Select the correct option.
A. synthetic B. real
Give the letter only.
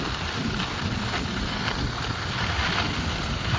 B